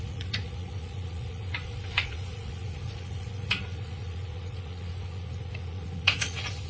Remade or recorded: remade